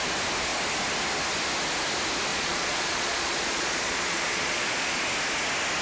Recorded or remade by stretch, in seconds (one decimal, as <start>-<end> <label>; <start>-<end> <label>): 0.0-2.3 recorded; 2.3-5.0 remade; 5.0-5.8 recorded